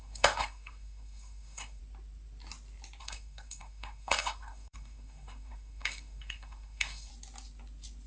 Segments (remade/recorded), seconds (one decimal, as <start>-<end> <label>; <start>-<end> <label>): 0.0-1.8 remade; 1.8-3.0 recorded; 3.0-7.1 remade; 7.1-8.1 recorded